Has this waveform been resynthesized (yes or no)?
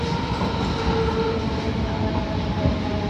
no